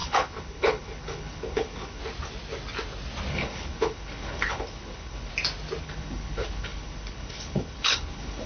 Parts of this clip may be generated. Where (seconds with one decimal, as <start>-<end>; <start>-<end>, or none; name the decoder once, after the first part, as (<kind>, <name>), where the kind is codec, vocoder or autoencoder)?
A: 0.0-2.0 (codec, HILCodec); 3.3-5.3; 5.8-8.5